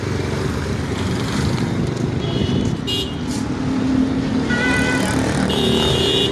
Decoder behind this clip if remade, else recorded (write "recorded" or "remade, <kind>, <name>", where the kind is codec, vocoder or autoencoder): recorded